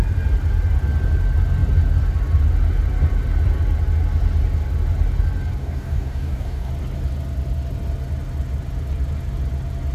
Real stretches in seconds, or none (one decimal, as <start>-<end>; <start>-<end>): 0.0-5.6; 6.7-9.9